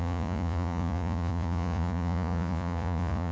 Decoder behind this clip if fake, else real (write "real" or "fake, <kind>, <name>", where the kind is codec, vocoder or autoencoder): fake, vocoder, Vocos